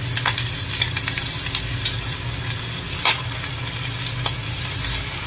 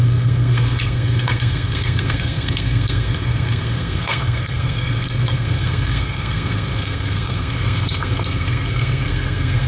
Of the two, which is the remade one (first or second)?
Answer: second